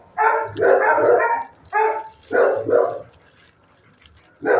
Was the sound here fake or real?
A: real